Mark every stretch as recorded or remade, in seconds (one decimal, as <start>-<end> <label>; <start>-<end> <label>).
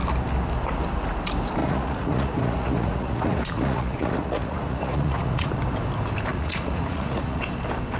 0.0-1.6 recorded; 1.6-5.5 remade; 5.5-6.3 recorded; 6.3-7.4 remade; 7.4-8.0 recorded